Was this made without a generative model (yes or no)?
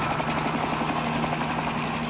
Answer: yes